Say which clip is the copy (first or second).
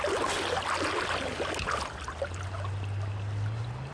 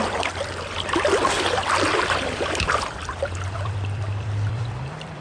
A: second